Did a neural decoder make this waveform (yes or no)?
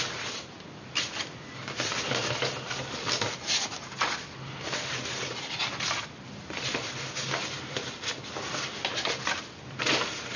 no